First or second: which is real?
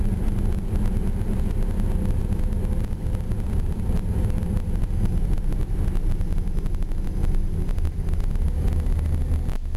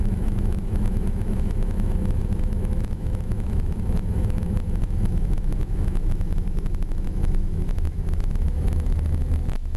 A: first